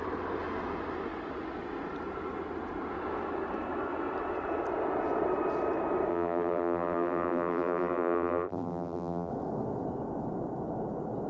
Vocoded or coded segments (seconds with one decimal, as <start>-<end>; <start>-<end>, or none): 6.1-9.3